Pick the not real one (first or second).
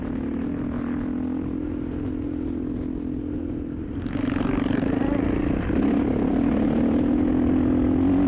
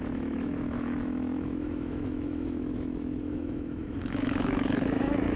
second